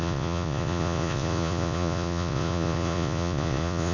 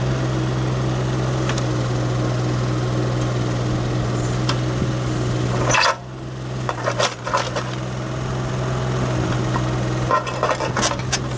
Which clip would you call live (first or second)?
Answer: second